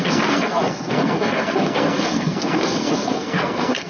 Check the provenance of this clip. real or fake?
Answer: fake